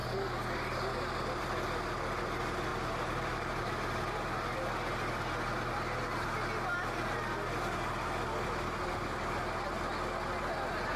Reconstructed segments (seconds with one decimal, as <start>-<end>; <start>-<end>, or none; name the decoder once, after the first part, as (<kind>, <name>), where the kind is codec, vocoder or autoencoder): 2.7-3.7 (vocoder, BigVGAN v2)